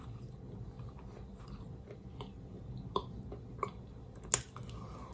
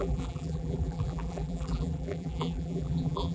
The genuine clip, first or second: first